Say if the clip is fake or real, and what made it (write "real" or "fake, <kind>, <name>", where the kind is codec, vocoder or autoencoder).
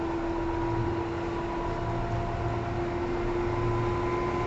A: real